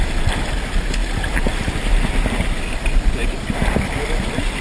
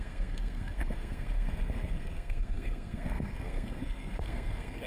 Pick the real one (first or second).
first